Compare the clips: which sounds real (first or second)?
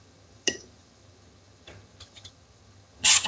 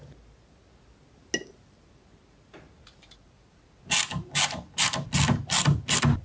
second